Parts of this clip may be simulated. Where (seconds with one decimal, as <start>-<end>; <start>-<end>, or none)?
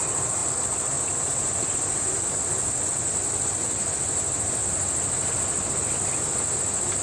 none